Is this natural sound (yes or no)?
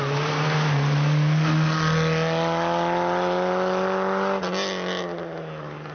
yes